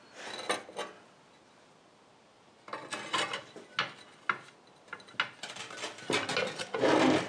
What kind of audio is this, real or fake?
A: real